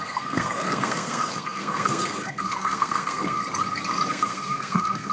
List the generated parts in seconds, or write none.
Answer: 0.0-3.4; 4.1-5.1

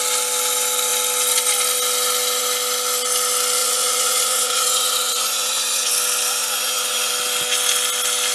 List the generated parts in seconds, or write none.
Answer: 3.6-5.9; 6.4-7.1

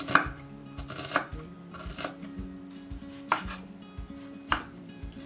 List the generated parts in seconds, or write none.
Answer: 0.0-1.3; 4.5-5.3

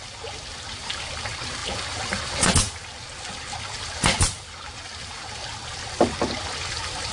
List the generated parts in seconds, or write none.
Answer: none

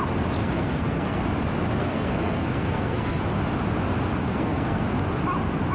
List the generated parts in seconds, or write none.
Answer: 0.4-1.2; 1.8-3.2; 4.3-4.9

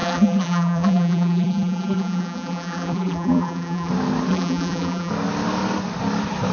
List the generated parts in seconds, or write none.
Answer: 0.0-3.9; 4.3-5.1

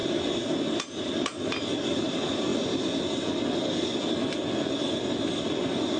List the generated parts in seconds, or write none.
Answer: none

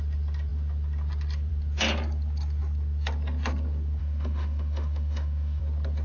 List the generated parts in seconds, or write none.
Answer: 4.0-5.6